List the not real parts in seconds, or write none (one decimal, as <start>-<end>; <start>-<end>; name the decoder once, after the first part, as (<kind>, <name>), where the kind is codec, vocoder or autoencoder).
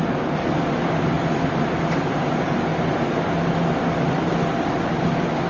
1.2-2.7 (vocoder, BigVGAN v2); 5.0-5.5